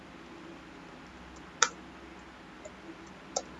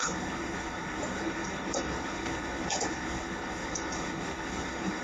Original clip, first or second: first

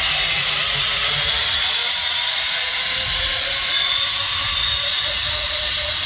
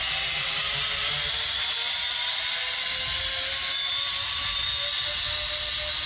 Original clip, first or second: second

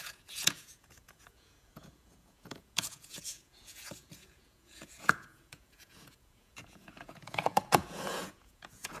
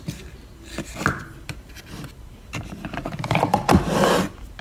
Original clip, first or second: second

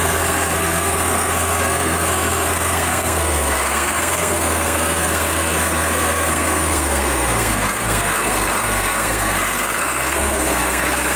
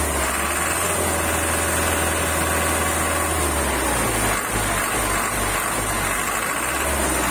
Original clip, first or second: second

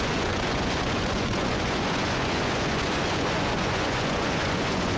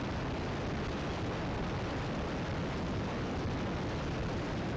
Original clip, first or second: second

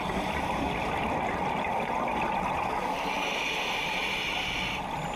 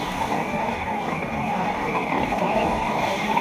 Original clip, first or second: first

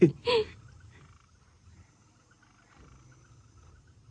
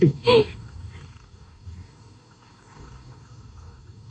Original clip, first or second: first